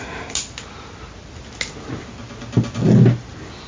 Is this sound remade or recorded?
recorded